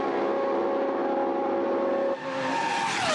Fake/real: real